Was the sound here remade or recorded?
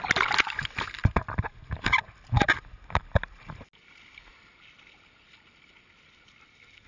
recorded